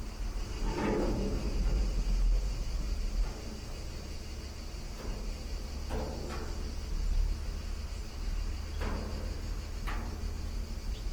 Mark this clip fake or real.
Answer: real